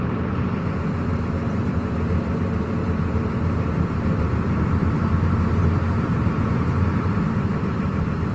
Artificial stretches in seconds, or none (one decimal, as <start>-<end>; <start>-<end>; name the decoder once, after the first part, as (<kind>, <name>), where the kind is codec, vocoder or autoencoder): 0.0-0.6 (vocoder, BigVGAN v2); 2.8-7.2

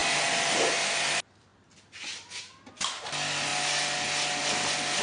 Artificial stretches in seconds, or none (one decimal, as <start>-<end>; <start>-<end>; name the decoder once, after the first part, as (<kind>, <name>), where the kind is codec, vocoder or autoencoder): none

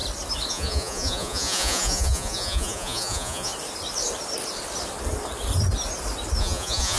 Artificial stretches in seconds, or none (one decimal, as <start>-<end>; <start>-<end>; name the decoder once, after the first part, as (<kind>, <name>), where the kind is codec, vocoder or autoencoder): 0.5-3.5 (vocoder, Vocos); 6.4-7.0

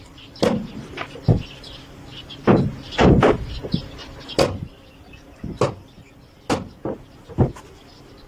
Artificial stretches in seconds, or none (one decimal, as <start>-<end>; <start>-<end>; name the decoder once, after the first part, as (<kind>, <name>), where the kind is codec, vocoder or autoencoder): none

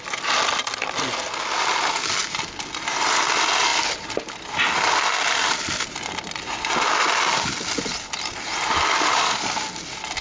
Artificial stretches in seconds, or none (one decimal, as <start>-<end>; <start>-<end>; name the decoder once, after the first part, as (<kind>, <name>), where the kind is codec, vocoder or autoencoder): none

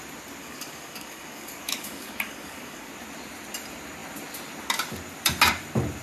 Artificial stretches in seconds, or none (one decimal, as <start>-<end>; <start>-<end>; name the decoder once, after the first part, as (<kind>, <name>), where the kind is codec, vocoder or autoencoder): 0.4-2.9 (codec, DAC)